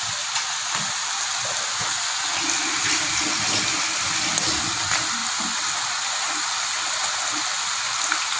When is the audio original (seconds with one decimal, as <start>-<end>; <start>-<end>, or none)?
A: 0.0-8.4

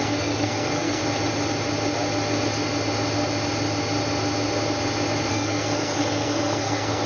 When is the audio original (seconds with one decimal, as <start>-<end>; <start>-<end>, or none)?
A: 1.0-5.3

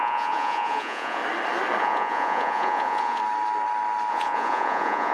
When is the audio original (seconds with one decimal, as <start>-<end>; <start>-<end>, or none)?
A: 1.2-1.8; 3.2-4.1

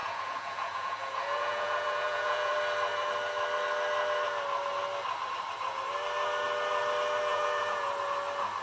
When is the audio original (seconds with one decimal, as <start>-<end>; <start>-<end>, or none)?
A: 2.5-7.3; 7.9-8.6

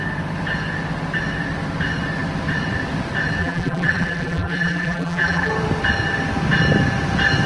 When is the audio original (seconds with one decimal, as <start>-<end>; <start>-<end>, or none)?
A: 0.0-3.4; 5.5-7.5

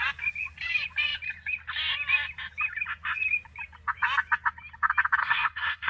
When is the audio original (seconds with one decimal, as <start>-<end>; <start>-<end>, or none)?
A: 0.0-5.2